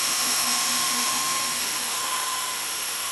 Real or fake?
fake